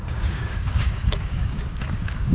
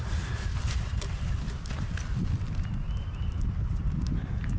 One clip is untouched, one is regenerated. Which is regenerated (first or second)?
first